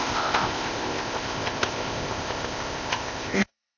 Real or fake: fake